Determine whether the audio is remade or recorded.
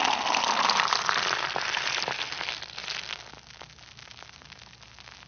recorded